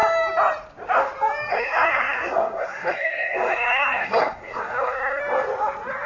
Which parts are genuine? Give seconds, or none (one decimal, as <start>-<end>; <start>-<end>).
0.0-1.5; 5.2-6.1